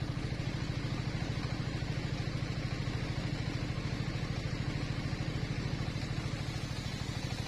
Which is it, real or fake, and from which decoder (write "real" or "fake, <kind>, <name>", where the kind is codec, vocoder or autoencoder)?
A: real